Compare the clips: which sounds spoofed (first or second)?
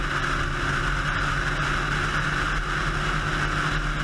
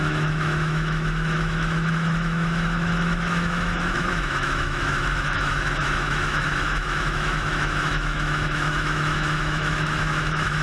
second